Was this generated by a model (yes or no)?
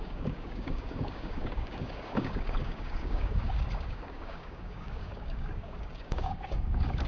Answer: yes